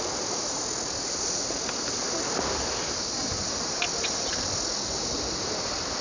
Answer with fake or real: real